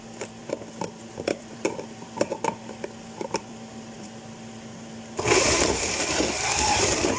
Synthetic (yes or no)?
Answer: yes